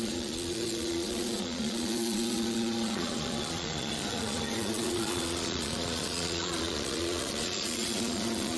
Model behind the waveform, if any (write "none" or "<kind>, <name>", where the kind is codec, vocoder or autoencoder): vocoder, Vocos